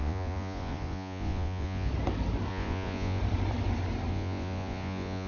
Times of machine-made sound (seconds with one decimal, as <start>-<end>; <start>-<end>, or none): 0.0-1.9; 2.5-3.2; 4.1-5.3